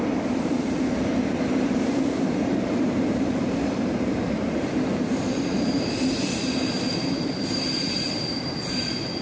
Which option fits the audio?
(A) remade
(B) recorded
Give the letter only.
A